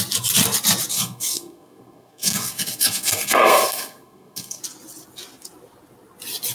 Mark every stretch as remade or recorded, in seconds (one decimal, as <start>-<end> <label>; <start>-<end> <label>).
0.0-0.9 recorded; 0.9-4.6 remade; 4.6-6.5 recorded